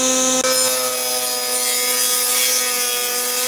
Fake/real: real